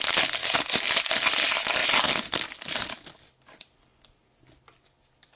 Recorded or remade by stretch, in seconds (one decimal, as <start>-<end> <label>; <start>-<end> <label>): 0.0-5.4 recorded